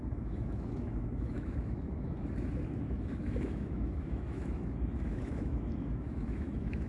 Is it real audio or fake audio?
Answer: fake